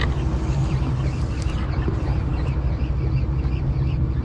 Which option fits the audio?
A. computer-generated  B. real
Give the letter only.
B